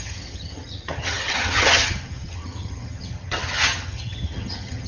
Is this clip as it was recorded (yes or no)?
no